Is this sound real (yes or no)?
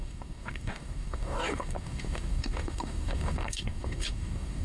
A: no